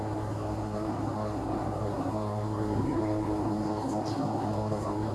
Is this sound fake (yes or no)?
yes